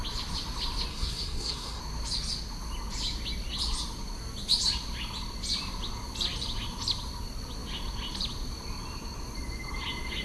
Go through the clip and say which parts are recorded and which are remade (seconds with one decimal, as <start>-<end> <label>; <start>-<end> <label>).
0.0-0.9 recorded; 0.9-1.8 remade; 1.8-10.2 recorded